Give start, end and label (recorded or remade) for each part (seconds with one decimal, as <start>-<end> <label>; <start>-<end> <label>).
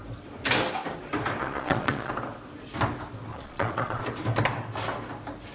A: 0.0-1.4 recorded; 1.4-2.1 remade; 2.1-3.3 recorded; 3.3-4.0 remade; 4.0-5.5 recorded